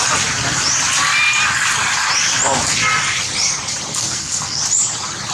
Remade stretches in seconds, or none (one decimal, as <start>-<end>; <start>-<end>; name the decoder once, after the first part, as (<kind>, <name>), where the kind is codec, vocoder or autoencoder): 3.9-4.6 (codec, SNAC)